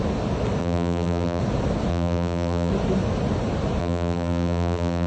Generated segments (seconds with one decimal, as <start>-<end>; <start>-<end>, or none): 0.6-1.4; 1.9-2.7; 3.8-5.1